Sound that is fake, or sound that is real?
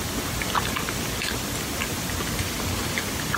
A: real